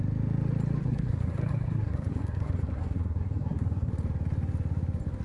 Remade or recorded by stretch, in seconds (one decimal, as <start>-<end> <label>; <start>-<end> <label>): 0.0-0.8 recorded; 0.8-3.9 remade; 3.9-5.2 recorded